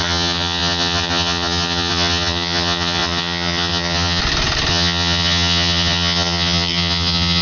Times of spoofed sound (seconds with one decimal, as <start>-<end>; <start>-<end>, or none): 0.0-4.2; 4.7-7.4